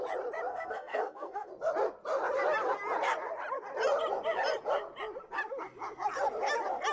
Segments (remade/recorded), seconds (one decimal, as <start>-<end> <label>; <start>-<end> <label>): 0.0-0.5 recorded; 0.5-1.5 remade; 1.5-6.9 recorded